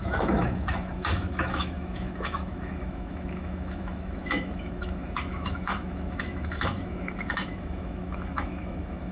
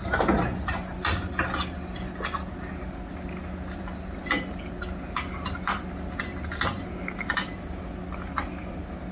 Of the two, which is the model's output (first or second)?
first